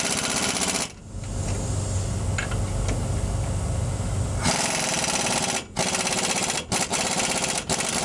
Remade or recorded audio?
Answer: recorded